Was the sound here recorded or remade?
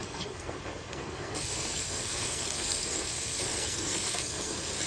remade